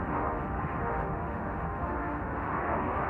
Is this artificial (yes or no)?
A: yes